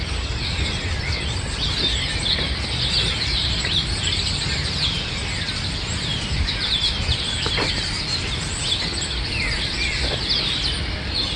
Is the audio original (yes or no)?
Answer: no